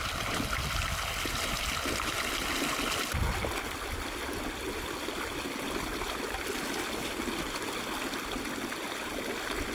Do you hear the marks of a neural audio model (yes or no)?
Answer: no